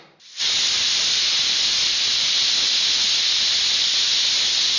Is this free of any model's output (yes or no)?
yes